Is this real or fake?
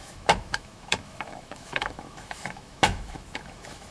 fake